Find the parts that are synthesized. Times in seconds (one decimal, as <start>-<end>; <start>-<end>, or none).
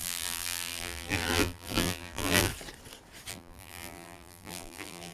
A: 0.0-2.5; 3.3-5.1